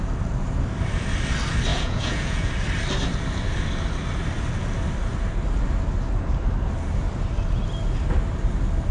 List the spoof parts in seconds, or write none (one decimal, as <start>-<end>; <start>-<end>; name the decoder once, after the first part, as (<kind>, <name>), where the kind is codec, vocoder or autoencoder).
1.7-2.5 (vocoder, Vocos)